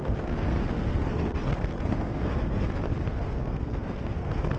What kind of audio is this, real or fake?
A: fake